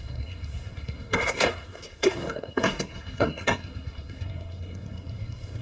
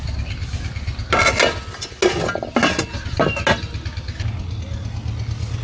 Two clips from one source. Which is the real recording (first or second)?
second